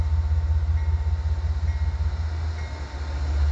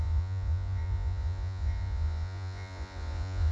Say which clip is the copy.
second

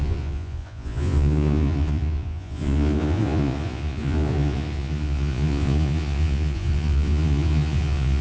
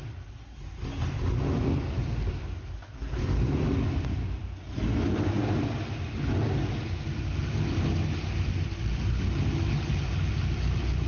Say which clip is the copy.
first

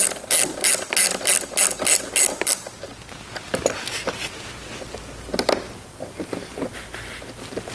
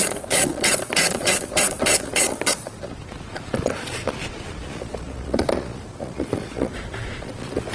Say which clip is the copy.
second